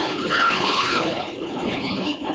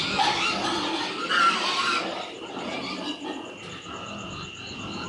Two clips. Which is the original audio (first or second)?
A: second